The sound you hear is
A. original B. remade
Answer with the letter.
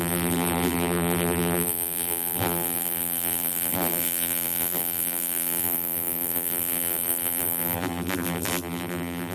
B